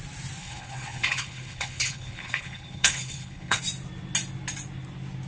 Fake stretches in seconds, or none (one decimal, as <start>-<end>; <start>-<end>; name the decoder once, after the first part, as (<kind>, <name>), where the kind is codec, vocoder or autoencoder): 0.4-3.6 (codec, HILCodec)